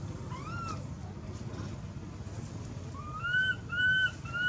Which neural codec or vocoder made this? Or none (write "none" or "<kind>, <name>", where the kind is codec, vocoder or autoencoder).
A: none